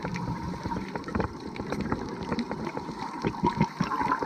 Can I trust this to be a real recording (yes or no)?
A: no